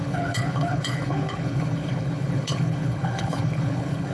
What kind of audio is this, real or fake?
fake